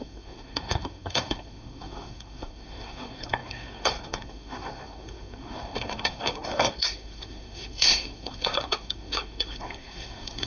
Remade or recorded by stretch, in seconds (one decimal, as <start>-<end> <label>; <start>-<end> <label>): 0.0-10.5 remade